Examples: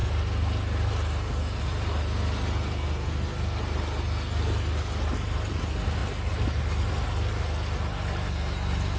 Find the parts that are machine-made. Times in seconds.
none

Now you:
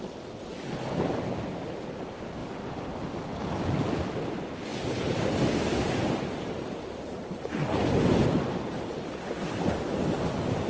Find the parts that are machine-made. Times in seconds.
4.7-9.2 (vocoder, BigVGAN v2)

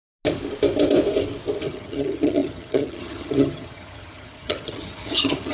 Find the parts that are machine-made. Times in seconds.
1.6-5.5 (vocoder, HiFi-GAN)

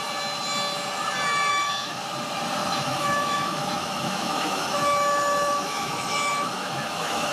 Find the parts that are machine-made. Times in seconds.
1.5-2.0 (autoencoder, DAC-VAE); 2.6-7.3

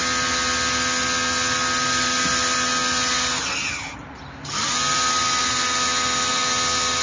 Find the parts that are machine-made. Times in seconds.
none

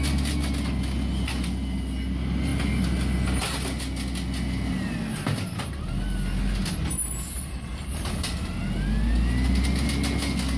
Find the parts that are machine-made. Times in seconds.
none